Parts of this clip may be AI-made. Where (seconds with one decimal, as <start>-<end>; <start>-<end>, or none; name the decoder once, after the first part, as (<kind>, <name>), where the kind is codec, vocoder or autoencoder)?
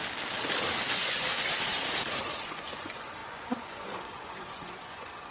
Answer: 0.9-1.3 (vocoder, Vocos); 2.4-5.3